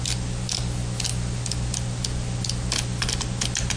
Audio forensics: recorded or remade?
recorded